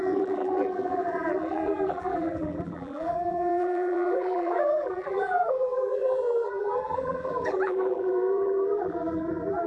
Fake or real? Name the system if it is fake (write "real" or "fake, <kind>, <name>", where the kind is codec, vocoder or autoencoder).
fake, vocoder, BigVGAN v2